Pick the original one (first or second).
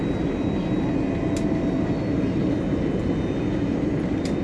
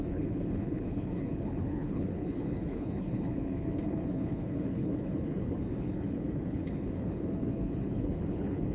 first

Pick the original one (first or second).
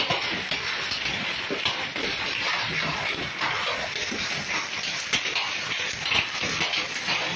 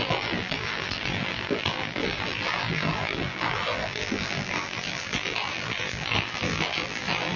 first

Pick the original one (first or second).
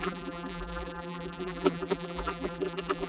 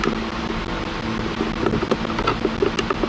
second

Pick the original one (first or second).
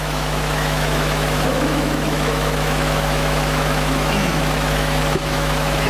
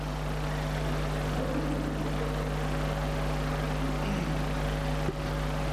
second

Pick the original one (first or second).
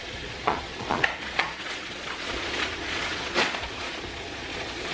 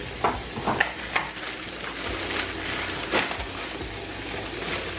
second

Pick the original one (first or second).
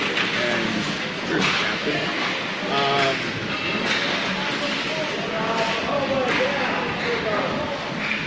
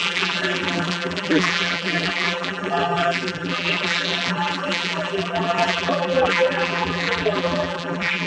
first